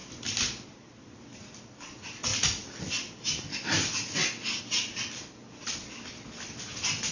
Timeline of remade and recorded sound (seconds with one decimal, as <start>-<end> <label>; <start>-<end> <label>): 0.0-7.1 recorded